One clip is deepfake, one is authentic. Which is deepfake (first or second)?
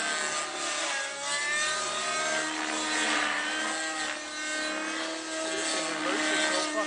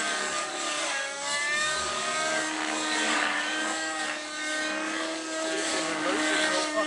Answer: second